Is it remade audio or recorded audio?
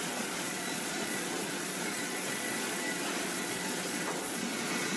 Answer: remade